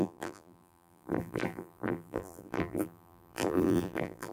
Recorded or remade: remade